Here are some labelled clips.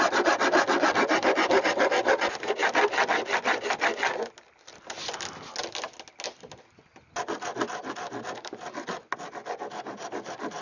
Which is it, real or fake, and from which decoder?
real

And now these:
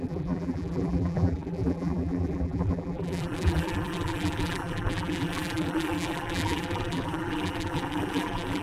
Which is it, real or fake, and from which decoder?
fake, vocoder, BigVGAN v2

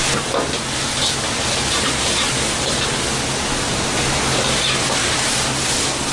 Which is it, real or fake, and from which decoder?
real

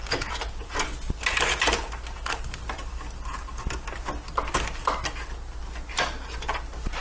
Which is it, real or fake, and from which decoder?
real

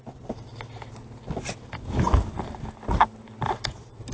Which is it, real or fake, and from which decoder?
real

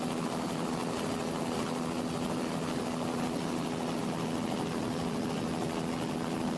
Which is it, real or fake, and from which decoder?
real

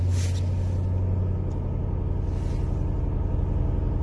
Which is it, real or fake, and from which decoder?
real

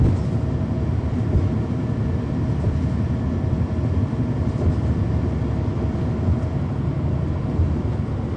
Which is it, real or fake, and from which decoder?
real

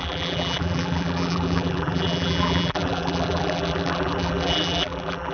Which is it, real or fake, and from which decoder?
fake, vocoder, BigVGAN v2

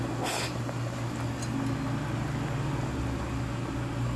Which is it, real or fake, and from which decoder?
real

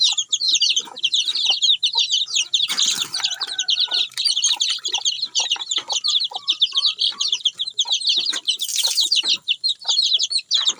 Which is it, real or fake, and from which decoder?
fake, vocoder, BigVGAN v2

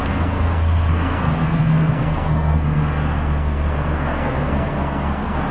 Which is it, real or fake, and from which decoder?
fake, codec, SNAC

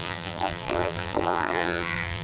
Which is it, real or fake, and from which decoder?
fake, vocoder, BigVGAN v2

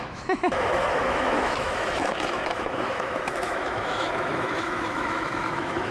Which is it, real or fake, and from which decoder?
fake, autoencoder, DAC-VAE